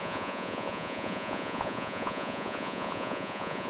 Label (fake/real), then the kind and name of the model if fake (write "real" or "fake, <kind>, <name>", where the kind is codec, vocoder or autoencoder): fake, vocoder, Vocos